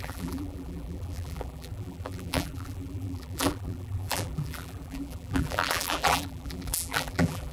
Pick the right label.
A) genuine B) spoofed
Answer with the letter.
B